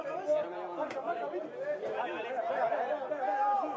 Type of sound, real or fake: real